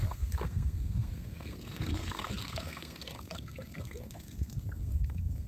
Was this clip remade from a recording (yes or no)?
yes